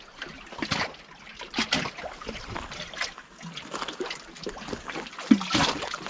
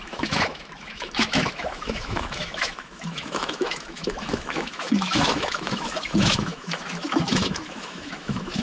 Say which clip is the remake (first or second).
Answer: second